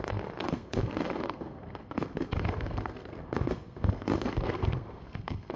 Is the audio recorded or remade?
remade